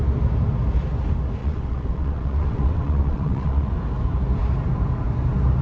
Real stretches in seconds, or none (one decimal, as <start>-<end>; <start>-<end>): 0.0-1.4; 3.7-5.6